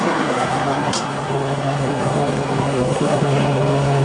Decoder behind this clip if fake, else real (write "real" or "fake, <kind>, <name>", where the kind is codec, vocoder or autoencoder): fake, codec, SNAC